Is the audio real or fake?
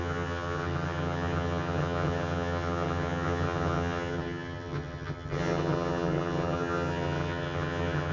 fake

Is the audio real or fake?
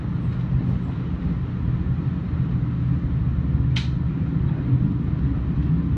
real